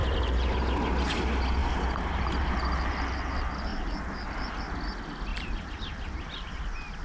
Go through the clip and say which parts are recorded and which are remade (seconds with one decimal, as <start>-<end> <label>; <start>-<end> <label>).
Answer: 0.0-0.8 remade; 0.8-1.6 recorded; 1.6-2.4 remade; 2.4-3.7 recorded; 3.7-4.5 remade; 4.5-5.3 recorded; 5.3-6.5 remade; 6.5-7.0 recorded